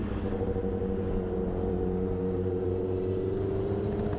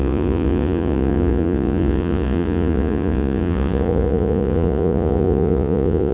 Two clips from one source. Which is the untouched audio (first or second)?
first